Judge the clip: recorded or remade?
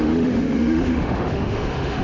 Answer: remade